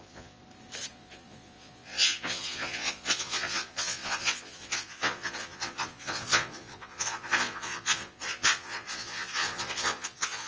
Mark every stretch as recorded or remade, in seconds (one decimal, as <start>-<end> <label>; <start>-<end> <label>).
0.0-0.4 remade; 0.4-0.9 recorded; 0.9-10.5 remade